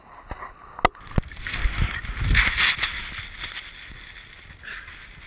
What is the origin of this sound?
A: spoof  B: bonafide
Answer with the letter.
B